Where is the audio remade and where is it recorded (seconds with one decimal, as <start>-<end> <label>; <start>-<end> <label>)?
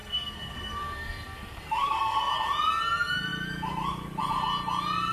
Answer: 0.0-2.3 remade; 2.3-5.1 recorded